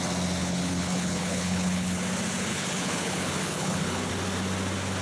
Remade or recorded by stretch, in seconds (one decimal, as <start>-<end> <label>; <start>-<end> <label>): 0.0-0.4 recorded; 0.4-2.0 remade; 2.0-2.5 recorded; 2.5-4.1 remade; 4.1-5.0 recorded

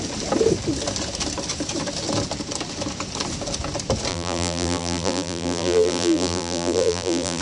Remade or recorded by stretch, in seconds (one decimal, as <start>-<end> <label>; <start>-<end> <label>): 0.0-4.1 recorded; 4.1-7.4 remade